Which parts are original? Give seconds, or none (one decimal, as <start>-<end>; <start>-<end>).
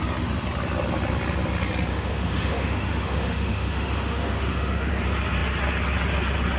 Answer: 0.0-1.9; 4.9-6.6